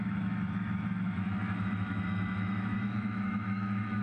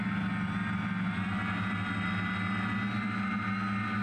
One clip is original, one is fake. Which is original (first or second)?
second